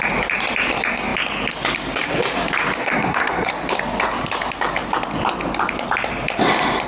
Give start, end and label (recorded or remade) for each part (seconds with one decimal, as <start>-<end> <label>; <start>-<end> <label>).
0.0-2.8 recorded; 2.8-3.5 remade; 3.5-6.9 recorded